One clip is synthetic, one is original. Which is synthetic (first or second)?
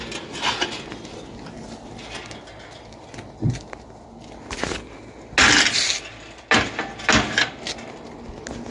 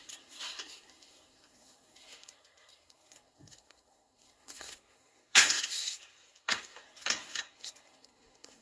second